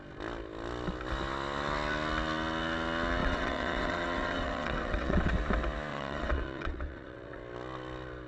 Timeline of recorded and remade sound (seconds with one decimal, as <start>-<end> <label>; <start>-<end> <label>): 0.0-3.2 recorded; 3.2-5.3 remade; 5.3-5.9 recorded; 5.9-7.4 remade; 7.4-8.3 recorded